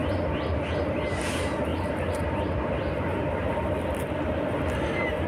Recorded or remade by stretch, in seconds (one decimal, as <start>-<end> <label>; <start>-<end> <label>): 0.0-1.7 recorded; 1.7-2.4 remade; 2.4-3.1 recorded; 3.1-5.3 remade